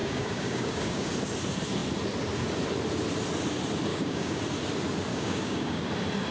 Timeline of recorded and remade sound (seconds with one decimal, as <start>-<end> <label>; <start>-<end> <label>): 0.0-1.1 remade; 1.1-3.9 recorded; 3.9-4.4 remade; 4.4-5.1 recorded; 5.1-5.8 remade; 5.8-6.3 recorded